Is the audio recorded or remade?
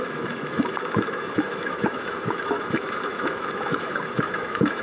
remade